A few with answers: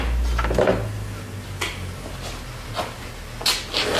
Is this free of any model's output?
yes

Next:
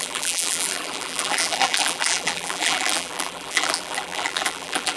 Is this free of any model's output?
no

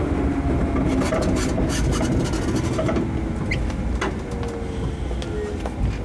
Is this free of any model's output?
yes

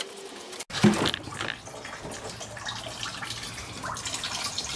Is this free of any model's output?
yes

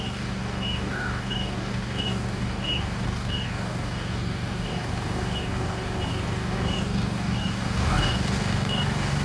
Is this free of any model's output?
no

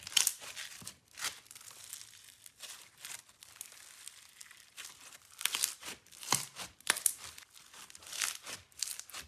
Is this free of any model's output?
no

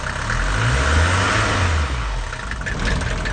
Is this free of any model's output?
yes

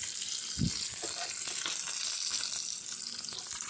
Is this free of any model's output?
yes